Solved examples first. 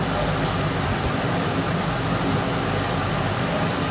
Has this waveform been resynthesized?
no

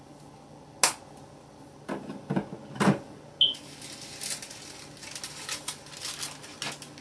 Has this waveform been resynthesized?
no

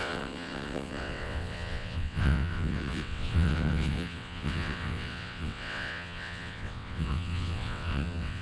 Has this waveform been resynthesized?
yes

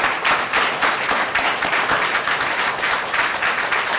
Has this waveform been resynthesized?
no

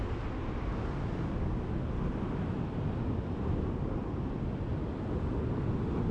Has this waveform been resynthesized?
no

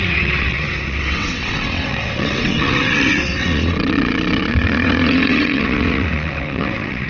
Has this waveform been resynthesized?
yes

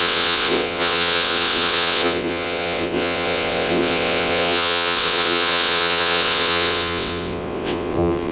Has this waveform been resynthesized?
yes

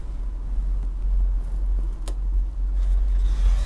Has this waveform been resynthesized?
no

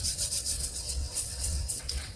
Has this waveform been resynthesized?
yes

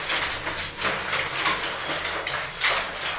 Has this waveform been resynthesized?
no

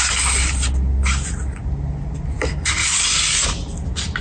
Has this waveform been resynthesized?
no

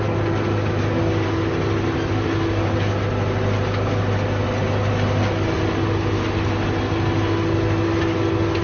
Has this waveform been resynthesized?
no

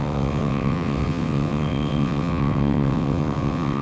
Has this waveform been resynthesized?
yes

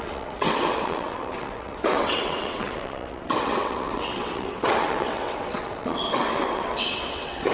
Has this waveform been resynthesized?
yes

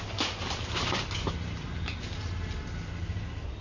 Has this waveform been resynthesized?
no